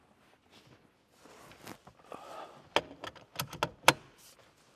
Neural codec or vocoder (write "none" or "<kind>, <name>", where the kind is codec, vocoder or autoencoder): none